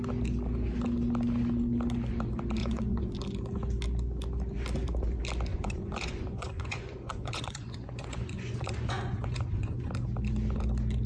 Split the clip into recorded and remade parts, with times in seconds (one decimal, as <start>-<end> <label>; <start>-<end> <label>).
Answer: 0.0-2.6 recorded; 2.6-3.1 remade; 3.1-5.5 recorded; 5.5-9.9 remade; 9.9-11.1 recorded